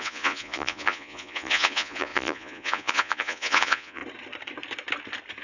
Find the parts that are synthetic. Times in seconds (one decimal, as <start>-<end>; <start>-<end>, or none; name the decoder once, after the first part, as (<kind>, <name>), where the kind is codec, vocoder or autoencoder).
0.0-4.0 (vocoder, Vocos)